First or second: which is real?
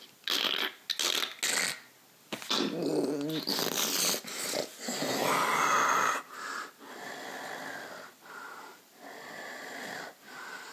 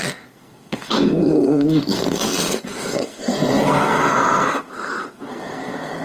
first